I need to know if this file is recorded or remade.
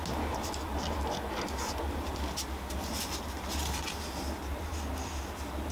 recorded